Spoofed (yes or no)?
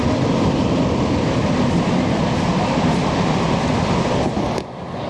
no